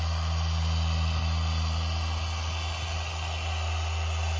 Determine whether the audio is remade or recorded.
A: recorded